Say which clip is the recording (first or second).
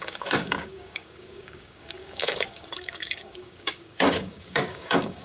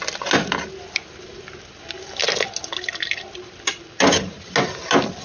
second